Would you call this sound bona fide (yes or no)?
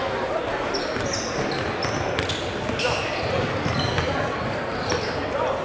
yes